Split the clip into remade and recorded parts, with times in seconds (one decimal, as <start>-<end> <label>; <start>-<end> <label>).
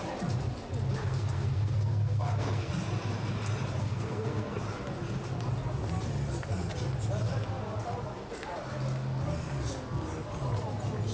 0.0-1.0 recorded; 1.0-2.7 remade; 2.7-3.8 recorded; 3.8-4.6 remade; 4.6-11.1 recorded